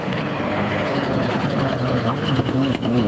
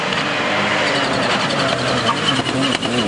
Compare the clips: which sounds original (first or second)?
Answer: second